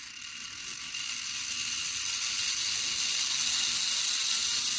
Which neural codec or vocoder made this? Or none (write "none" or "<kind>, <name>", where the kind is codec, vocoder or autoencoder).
none